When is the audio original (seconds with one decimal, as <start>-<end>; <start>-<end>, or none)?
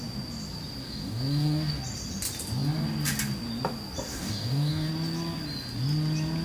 0.0-0.8; 1.8-4.1; 4.9-6.4